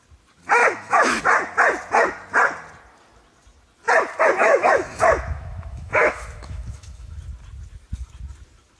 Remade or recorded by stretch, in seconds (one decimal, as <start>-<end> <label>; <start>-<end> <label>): 0.0-0.6 recorded; 0.6-1.2 remade; 1.2-4.4 recorded; 4.4-7.2 remade; 7.2-8.8 recorded